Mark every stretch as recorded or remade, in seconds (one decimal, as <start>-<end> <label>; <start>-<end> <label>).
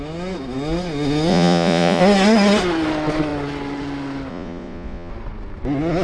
0.0-1.3 recorded; 1.3-2.0 remade; 2.0-4.3 recorded; 4.3-5.1 remade; 5.1-6.0 recorded